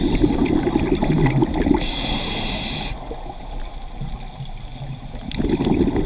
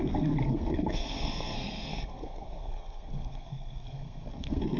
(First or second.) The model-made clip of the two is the second